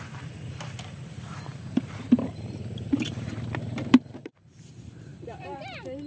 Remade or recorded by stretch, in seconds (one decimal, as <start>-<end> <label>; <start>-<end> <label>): 0.0-6.1 remade